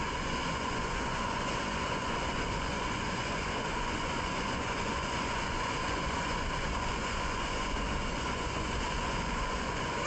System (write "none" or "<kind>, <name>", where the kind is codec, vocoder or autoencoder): vocoder, Vocos